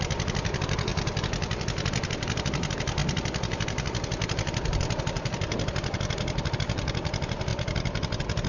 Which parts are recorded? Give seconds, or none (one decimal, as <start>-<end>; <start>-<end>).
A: 0.0-0.9; 2.4-3.0; 6.5-8.5

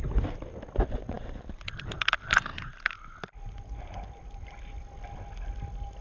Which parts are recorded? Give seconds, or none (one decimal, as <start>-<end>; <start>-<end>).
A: 0.0-6.0

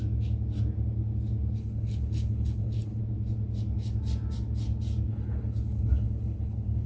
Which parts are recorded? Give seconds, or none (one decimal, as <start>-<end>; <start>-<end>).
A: 0.0-1.6; 3.0-5.1

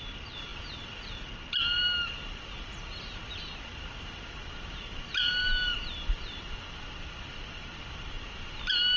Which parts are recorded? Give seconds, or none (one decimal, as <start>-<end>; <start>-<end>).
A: 0.0-9.0

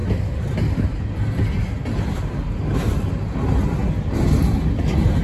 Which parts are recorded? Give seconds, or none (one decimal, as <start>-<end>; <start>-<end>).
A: 0.0-5.2

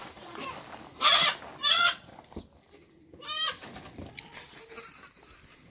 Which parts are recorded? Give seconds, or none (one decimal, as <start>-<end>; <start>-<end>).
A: 0.4-1.7; 2.1-5.7

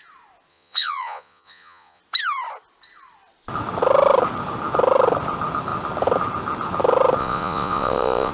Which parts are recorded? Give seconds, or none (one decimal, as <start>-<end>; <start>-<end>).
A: 0.0-0.5; 2.0-7.2

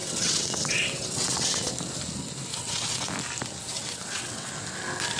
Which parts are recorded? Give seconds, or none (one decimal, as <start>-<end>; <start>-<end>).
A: 1.7-2.5; 3.1-3.6; 4.5-5.2